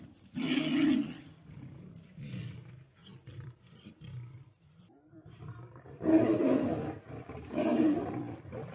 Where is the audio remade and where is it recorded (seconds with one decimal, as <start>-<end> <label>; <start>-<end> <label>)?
0.0-3.1 recorded; 3.1-6.4 remade; 6.4-7.7 recorded; 7.7-8.7 remade